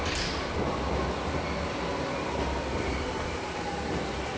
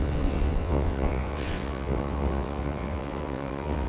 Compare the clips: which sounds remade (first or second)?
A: second